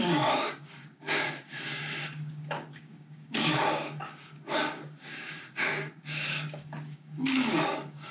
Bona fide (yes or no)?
no